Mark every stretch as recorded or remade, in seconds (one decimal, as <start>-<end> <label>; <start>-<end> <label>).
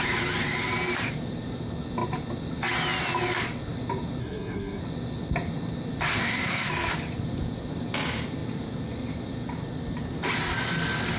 0.0-4.2 recorded; 4.2-4.8 remade; 4.8-6.1 recorded; 6.1-6.7 remade; 6.7-11.2 recorded